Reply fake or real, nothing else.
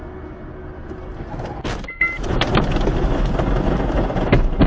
real